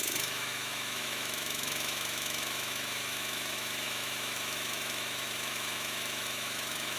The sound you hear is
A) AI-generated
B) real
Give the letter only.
A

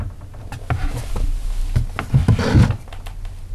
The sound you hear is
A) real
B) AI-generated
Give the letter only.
A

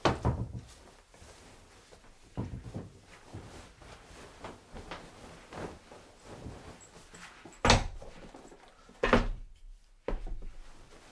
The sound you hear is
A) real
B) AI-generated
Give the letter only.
A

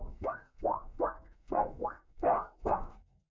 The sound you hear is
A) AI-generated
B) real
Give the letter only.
A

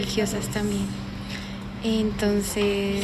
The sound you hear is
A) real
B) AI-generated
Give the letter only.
A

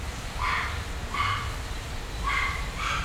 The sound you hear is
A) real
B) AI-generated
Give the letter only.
B